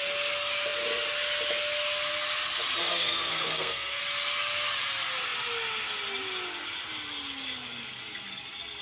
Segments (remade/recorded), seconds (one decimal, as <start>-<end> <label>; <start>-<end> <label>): 0.0-2.9 recorded; 2.9-4.0 remade; 4.0-8.8 recorded